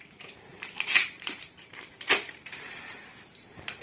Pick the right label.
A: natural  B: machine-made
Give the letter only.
B